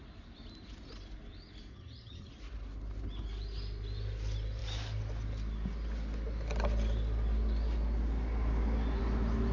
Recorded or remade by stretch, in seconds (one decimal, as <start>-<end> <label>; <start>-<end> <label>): 0.0-1.7 recorded; 1.7-2.3 remade; 2.3-9.5 recorded